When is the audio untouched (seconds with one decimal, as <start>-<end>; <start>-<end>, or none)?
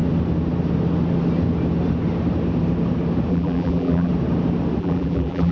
0.0-3.3; 4.1-4.8